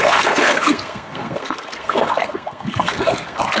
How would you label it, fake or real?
fake